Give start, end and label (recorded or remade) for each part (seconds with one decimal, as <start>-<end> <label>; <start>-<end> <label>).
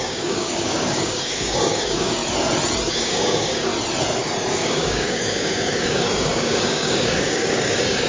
0.0-2.2 remade; 2.2-2.9 recorded; 2.9-3.7 remade; 3.7-4.5 recorded; 4.5-8.1 remade